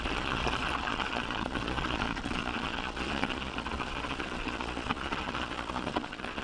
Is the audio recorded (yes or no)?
no